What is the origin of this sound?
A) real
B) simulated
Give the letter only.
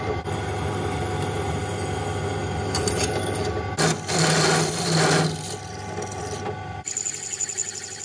A